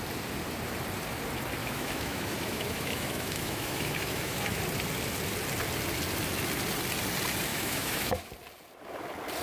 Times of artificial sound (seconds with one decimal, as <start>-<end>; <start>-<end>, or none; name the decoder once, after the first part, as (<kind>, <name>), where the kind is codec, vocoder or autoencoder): 1.6-4.6 (autoencoder, DAC-VAE); 7.5-8.3